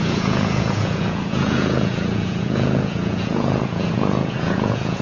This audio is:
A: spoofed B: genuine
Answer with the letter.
A